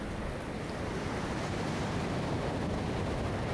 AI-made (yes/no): no